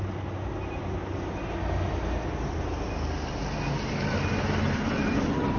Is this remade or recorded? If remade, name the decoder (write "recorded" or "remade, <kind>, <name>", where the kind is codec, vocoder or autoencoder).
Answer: recorded